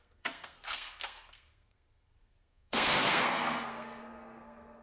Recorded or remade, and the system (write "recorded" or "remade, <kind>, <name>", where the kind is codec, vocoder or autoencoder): remade, codec, SNAC